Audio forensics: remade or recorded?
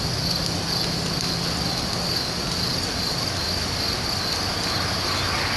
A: recorded